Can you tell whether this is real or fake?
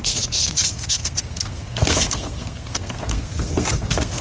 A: fake